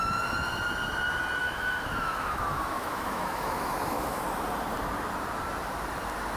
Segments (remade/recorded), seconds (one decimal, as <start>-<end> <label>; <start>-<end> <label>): 0.0-1.4 recorded; 1.4-4.2 remade; 4.2-6.4 recorded